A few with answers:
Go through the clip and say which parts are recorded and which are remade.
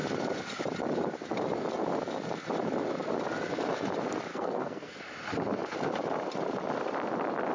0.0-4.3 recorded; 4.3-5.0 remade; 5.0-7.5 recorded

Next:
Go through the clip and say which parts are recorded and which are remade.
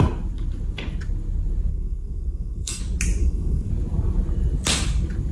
0.0-1.7 recorded; 1.7-2.8 remade; 2.8-3.2 recorded; 3.2-3.7 remade; 3.7-5.3 recorded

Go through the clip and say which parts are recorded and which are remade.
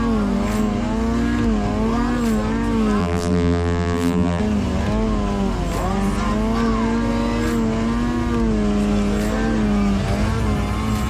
0.0-3.0 recorded; 3.0-4.4 remade; 4.4-11.1 recorded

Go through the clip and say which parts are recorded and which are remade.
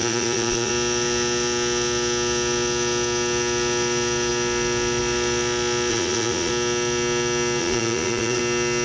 0.0-0.7 remade; 0.7-5.9 recorded; 5.9-6.5 remade; 6.5-7.6 recorded; 7.6-8.4 remade; 8.4-8.8 recorded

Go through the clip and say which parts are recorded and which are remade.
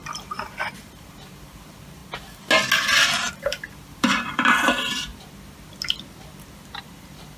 0.0-2.0 remade; 2.0-3.3 recorded; 3.3-5.1 remade; 5.1-6.8 recorded; 6.8-7.4 remade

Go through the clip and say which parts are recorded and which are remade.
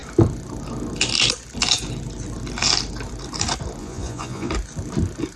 0.0-3.8 recorded; 3.8-4.5 remade; 4.5-5.4 recorded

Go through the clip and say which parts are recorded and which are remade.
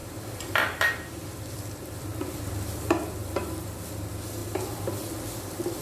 0.0-2.5 remade; 2.5-3.2 recorded; 3.2-3.9 remade; 3.9-4.4 recorded; 4.4-5.1 remade; 5.1-5.8 recorded